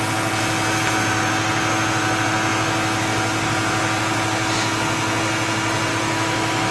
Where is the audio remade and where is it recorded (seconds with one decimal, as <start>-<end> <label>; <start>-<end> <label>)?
0.0-5.9 recorded; 5.9-6.7 remade